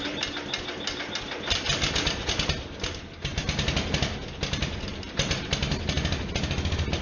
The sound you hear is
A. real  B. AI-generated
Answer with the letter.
A